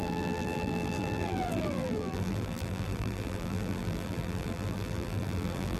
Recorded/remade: remade